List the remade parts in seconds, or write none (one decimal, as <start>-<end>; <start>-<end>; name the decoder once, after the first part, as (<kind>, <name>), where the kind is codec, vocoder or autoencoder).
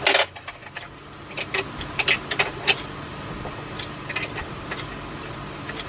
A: none